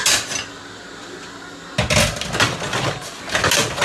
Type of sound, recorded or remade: recorded